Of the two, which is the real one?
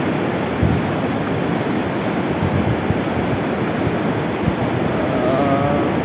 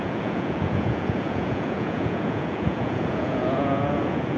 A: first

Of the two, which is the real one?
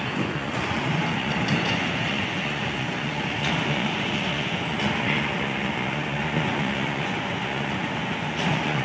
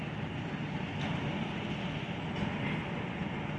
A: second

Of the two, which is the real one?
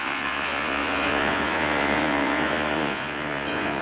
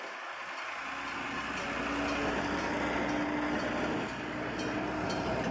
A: second